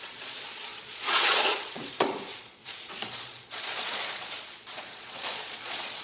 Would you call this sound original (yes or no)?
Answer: no